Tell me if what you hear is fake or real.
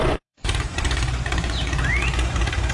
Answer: fake